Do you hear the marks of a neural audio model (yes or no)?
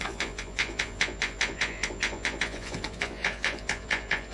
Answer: yes